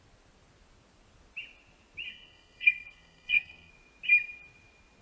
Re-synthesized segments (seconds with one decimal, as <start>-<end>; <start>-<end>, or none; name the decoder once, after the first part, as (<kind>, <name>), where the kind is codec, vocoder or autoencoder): 2.1-3.7 (codec, SNAC)